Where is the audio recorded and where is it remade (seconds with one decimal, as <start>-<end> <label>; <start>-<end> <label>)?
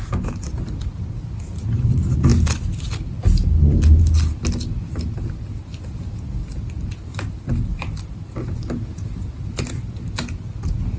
0.0-11.0 recorded